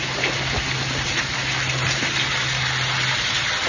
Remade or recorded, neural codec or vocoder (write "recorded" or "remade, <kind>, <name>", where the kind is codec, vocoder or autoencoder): recorded